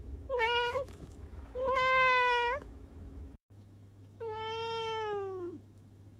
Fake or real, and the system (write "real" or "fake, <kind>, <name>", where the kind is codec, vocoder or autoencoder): fake, autoencoder, DAC-VAE